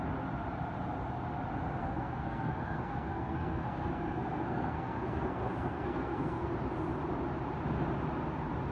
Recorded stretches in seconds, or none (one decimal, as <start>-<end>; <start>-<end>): 0.0-1.8; 6.5-8.7